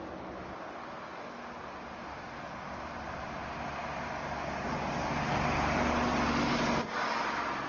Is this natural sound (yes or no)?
yes